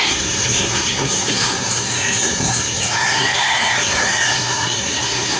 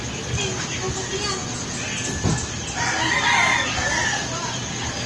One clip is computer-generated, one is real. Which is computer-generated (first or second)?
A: first